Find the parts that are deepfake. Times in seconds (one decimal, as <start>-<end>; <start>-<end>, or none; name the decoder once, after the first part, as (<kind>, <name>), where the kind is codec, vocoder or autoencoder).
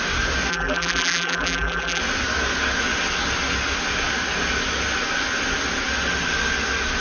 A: 0.5-2.0 (vocoder, BigVGAN v2)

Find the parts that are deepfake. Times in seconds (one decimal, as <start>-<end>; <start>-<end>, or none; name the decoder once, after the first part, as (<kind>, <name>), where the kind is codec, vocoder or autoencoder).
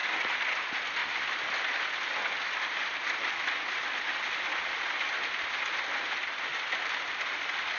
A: 0.0-0.5 (vocoder, BigVGAN v2)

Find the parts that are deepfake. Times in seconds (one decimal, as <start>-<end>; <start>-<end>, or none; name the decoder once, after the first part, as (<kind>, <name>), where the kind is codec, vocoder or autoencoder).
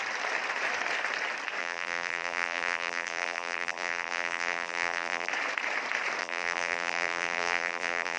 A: 1.6-5.3 (vocoder, BigVGAN v2); 6.2-8.2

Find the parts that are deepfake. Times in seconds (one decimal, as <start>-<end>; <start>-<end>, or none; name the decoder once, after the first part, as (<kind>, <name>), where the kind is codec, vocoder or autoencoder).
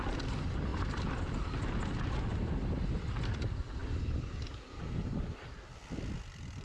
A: 0.0-0.7 (vocoder, BigVGAN v2); 2.3-6.6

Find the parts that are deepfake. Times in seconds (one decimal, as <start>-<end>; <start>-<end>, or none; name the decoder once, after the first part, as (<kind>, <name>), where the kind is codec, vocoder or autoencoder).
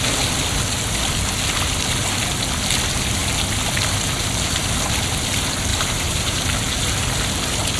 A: 5.7-6.6 (vocoder, BigVGAN v2)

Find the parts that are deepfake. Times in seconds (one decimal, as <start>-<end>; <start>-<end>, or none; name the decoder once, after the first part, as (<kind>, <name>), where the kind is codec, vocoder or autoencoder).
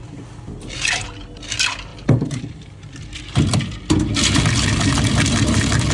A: 1.9-3.2 (vocoder, BigVGAN v2)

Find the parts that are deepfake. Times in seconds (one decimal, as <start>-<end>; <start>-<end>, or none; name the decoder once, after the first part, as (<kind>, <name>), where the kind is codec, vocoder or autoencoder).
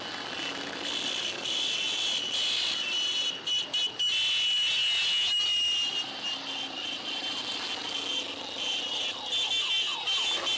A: none